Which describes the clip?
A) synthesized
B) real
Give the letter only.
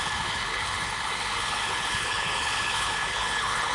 A